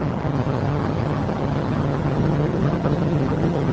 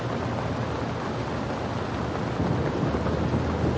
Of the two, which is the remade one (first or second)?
first